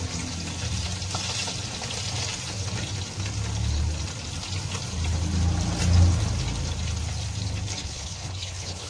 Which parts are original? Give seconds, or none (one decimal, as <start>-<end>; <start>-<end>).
0.0-7.8